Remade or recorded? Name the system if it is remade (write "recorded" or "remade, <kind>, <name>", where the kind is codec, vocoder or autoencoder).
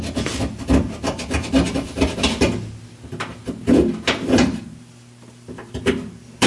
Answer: recorded